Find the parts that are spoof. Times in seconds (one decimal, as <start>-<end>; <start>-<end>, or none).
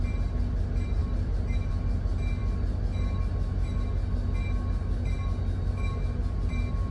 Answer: none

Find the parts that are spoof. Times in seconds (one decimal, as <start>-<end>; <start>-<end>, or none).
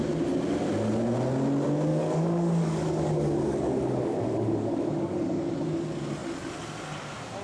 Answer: 1.9-5.5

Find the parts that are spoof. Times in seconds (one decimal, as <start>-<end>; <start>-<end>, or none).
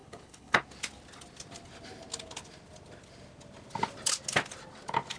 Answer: 0.0-0.6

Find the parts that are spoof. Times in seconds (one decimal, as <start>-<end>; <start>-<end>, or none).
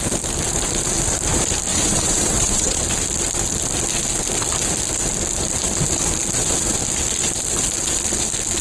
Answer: 1.7-2.8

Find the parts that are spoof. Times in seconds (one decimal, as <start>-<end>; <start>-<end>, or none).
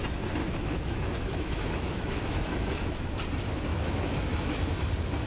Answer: 0.4-3.1; 3.7-4.8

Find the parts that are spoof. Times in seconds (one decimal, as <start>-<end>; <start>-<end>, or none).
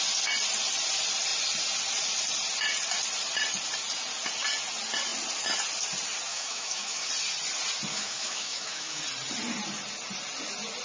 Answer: 6.3-7.1; 7.9-9.0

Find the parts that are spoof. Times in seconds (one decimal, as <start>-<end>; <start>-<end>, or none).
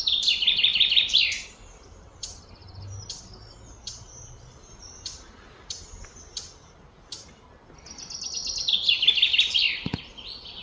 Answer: none